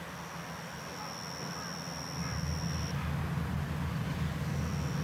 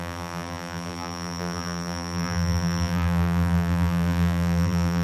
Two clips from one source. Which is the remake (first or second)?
second